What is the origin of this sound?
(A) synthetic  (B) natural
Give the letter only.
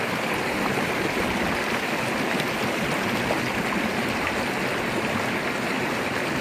B